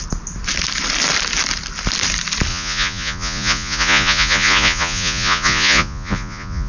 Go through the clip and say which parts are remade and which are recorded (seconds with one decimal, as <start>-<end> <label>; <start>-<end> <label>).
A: 0.0-2.5 recorded; 2.5-6.7 remade